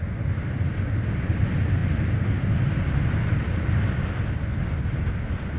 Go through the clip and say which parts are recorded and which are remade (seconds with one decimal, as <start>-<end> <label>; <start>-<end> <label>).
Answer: 0.0-5.6 recorded